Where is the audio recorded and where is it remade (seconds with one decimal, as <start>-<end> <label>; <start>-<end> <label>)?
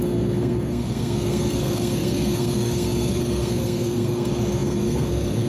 0.0-5.5 remade